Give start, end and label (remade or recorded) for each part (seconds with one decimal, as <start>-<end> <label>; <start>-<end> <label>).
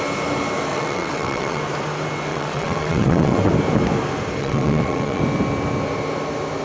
0.0-0.7 recorded; 0.7-1.6 remade; 1.6-2.3 recorded; 2.3-3.5 remade; 3.5-4.4 recorded; 4.4-5.2 remade; 5.2-6.6 recorded